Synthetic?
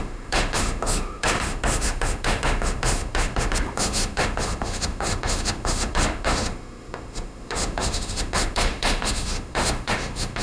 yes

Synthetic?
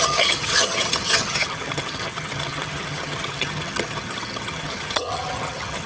yes